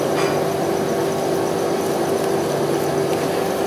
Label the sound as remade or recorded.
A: recorded